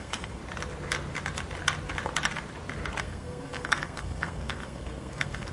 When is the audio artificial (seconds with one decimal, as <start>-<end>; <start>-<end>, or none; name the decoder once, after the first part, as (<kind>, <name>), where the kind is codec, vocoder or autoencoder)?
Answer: 0.0-0.4 (codec, SNAC); 3.0-5.5